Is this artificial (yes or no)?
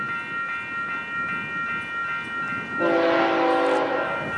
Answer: no